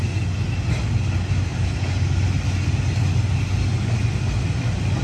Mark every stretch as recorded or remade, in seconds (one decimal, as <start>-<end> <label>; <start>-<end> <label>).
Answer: 0.0-5.0 recorded